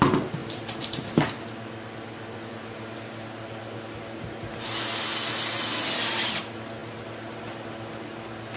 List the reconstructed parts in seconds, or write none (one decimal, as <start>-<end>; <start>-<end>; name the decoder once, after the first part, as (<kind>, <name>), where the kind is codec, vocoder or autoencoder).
0.4-1.2 (vocoder, BigVGAN v2)